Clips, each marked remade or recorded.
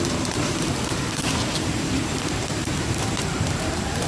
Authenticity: remade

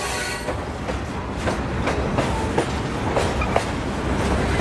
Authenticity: recorded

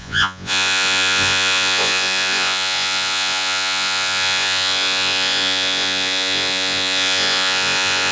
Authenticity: remade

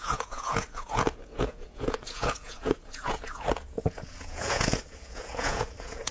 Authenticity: remade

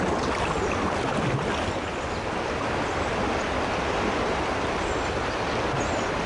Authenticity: recorded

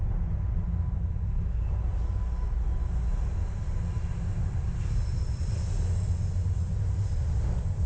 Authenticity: recorded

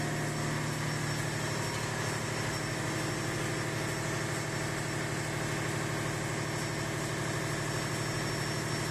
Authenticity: recorded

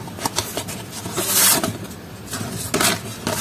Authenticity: recorded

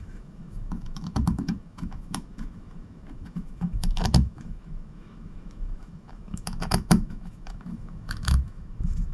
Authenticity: remade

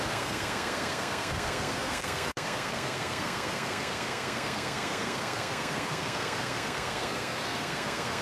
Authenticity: remade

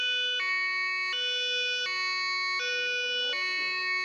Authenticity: recorded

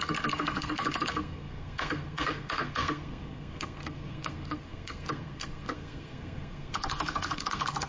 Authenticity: remade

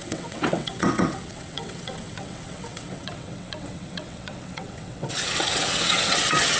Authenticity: remade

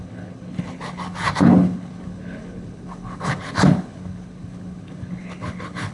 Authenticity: remade